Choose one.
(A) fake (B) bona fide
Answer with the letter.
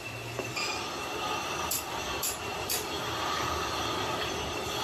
A